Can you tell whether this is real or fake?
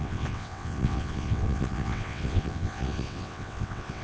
fake